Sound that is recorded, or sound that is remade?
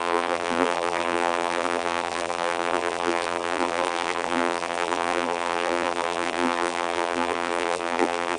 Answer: remade